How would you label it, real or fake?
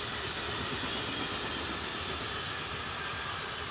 real